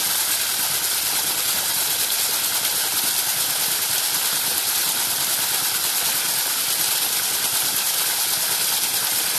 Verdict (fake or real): real